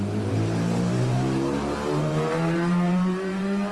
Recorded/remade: remade